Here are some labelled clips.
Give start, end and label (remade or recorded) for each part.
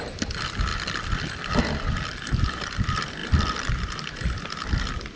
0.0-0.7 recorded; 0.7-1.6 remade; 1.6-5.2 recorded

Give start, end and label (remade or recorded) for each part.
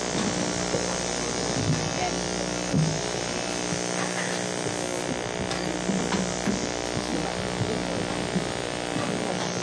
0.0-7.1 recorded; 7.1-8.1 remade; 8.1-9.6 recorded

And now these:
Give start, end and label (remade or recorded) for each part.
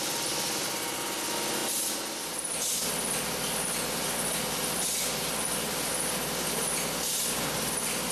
0.0-8.1 recorded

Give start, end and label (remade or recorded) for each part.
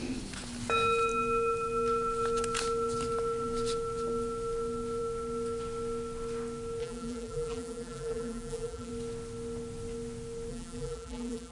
0.0-6.8 recorded; 6.8-8.9 remade; 8.9-10.5 recorded; 10.5-11.5 remade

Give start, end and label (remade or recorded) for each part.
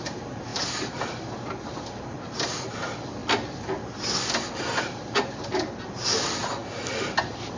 0.0-7.6 recorded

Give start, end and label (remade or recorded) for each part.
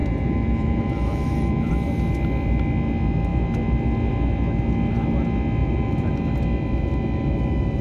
0.0-1.7 remade; 1.7-5.6 recorded; 5.6-6.2 remade; 6.2-7.8 recorded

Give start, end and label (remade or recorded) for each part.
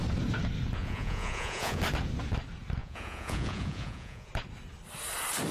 0.0-0.8 recorded; 0.8-1.8 remade; 1.8-2.8 recorded; 2.8-4.3 remade; 4.3-5.5 recorded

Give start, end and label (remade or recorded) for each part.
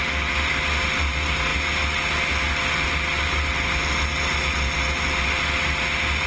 0.0-6.3 recorded